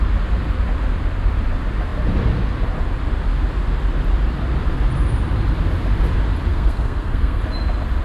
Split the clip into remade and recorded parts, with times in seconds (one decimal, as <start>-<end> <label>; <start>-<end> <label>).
0.0-6.5 recorded; 6.5-7.4 remade; 7.4-8.0 recorded